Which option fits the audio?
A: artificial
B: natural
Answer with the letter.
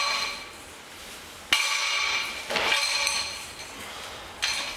B